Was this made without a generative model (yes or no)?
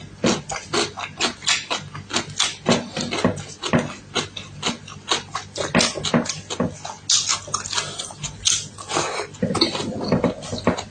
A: yes